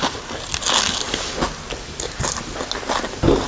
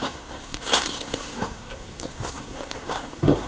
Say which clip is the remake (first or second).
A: second